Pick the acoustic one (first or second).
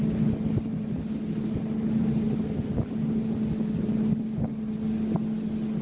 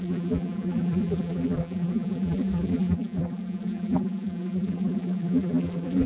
first